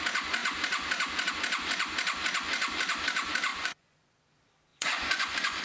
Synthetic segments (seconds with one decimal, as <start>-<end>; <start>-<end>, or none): 3.5-4.3; 4.7-5.6